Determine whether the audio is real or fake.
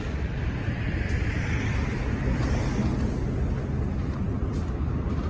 real